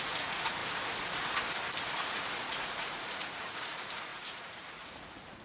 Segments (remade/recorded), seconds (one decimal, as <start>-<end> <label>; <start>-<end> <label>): 0.0-0.6 remade; 0.6-1.8 recorded; 1.8-5.4 remade